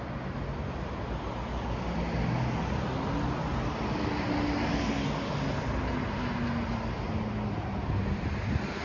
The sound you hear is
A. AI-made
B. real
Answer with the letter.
B